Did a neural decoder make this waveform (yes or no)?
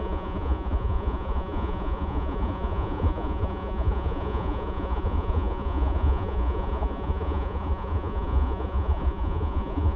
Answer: yes